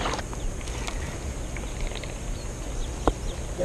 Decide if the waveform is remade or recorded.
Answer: recorded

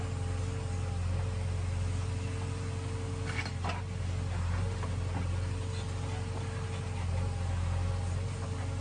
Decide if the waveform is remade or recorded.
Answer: recorded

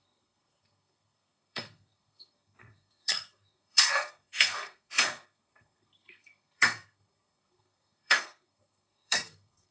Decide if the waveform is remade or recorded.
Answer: remade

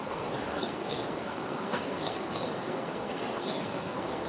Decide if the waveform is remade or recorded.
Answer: remade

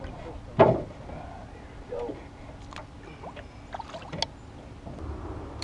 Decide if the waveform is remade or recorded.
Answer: recorded